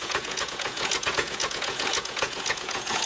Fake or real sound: fake